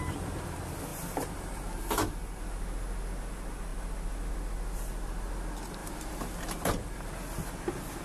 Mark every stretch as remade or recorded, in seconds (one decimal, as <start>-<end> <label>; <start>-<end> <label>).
0.0-0.9 recorded; 0.9-2.4 remade; 2.4-5.8 recorded; 5.8-7.1 remade; 7.1-8.0 recorded